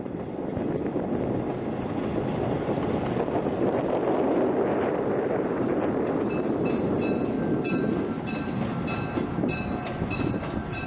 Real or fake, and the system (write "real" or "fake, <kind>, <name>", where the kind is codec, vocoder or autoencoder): real